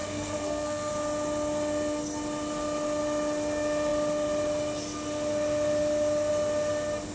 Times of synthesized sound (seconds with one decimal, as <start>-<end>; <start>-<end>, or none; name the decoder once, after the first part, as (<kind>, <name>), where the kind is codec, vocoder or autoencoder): 0.0-0.9 (codec, SNAC)